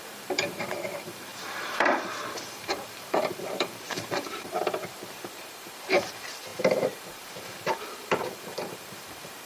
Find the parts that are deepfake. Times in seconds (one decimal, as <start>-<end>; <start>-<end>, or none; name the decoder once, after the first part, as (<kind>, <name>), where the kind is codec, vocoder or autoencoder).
0.0-9.5 (vocoder, BigVGAN v2)